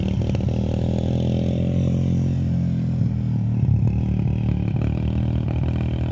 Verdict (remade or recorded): recorded